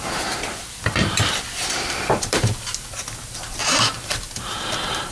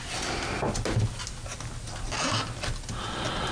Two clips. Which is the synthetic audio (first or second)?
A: first